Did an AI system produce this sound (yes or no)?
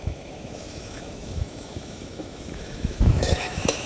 yes